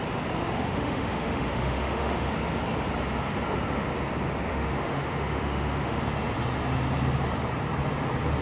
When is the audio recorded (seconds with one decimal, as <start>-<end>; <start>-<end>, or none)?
0.0-0.4; 2.3-4.5; 6.0-8.4